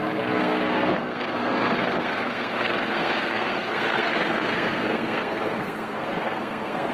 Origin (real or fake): fake